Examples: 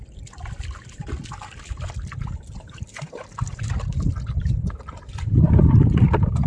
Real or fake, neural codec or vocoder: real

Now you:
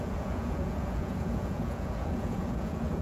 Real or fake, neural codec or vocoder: fake, vocoder, Vocos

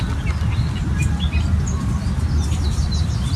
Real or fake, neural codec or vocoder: real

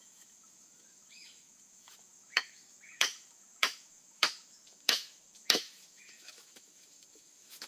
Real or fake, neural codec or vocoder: fake, autoencoder, DAC-VAE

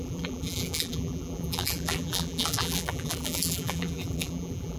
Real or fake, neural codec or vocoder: fake, vocoder, BigVGAN v2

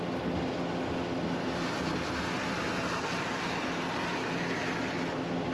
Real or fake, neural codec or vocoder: real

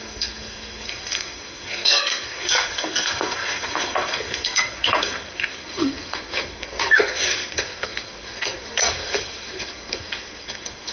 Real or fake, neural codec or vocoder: fake, codec, SNAC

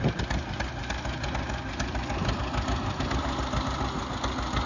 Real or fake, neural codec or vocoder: real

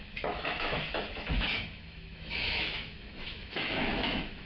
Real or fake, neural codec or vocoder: fake, autoencoder, DAC-VAE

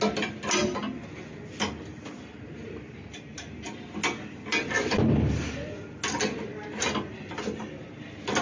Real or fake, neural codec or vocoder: real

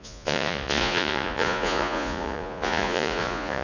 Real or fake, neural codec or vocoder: fake, vocoder, Vocos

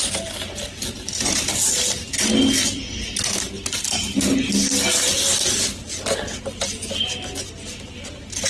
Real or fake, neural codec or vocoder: real